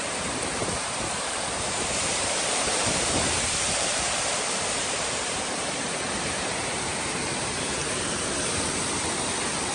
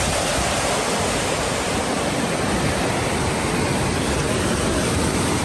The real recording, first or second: second